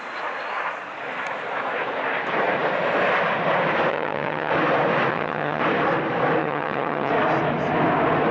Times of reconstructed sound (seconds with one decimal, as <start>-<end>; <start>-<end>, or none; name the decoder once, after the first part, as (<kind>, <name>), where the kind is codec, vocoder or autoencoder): 3.9-4.5 (vocoder, HiFi-GAN); 5.1-5.6; 6.4-7.1